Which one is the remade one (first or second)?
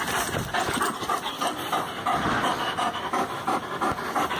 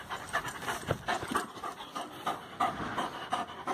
second